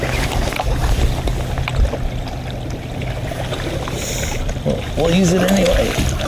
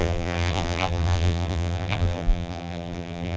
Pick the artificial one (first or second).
second